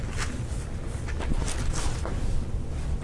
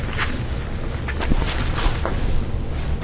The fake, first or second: first